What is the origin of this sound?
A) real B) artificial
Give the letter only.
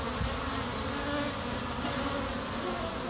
A